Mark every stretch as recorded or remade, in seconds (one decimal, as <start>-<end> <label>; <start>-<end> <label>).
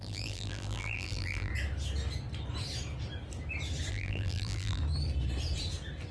0.0-1.5 remade; 1.5-3.9 recorded; 3.9-4.8 remade; 4.8-6.1 recorded